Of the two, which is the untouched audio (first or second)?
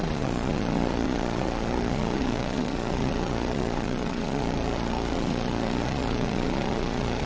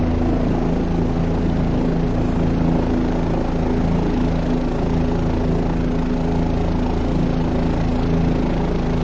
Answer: second